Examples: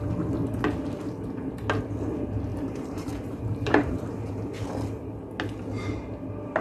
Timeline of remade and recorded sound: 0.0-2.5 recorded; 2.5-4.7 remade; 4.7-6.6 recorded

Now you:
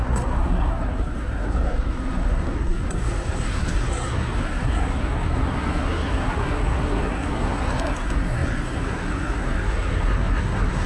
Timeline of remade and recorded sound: 0.0-10.9 remade